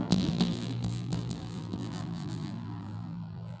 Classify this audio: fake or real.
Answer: fake